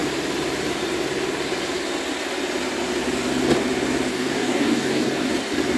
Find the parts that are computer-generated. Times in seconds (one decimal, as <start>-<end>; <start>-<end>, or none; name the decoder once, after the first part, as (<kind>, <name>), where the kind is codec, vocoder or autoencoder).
4.1-5.3 (codec, DAC)

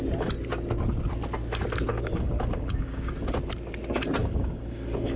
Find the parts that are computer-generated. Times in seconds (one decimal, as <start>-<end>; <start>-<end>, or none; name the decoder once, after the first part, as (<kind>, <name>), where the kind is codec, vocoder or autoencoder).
1.9-3.1 (codec, DAC); 4.2-5.2

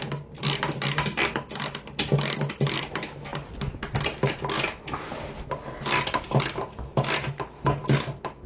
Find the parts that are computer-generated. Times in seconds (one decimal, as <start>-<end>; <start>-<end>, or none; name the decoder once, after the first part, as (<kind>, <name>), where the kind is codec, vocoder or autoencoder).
none

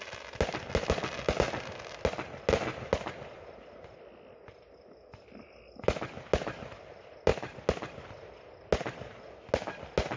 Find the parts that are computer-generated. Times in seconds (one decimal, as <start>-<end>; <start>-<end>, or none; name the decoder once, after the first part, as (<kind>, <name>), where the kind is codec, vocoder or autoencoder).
none

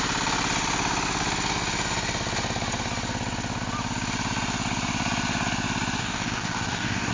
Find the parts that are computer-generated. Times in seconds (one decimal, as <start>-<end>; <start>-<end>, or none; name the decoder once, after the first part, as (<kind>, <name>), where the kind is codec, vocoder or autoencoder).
6.0-7.1 (codec, DAC)

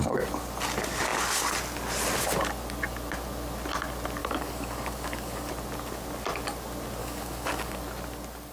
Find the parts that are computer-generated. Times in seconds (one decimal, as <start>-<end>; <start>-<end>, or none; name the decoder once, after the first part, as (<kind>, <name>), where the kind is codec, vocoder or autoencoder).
4.2-5.5 (codec, DAC); 7.0-7.8

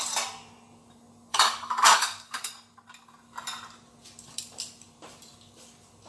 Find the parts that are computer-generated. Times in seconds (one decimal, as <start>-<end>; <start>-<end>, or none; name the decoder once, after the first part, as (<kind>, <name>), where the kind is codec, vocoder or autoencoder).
1.3-2.5 (codec, DAC)

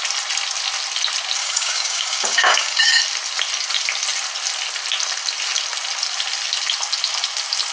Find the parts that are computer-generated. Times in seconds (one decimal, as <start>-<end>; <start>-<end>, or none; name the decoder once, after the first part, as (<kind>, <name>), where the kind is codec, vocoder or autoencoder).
1.4-3.0 (codec, DAC)